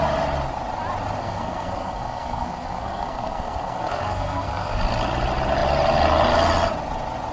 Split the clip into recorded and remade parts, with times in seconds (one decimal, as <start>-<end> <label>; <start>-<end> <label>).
0.0-1.2 recorded; 1.2-4.8 remade; 4.8-7.3 recorded